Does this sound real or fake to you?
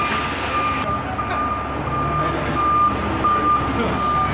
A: real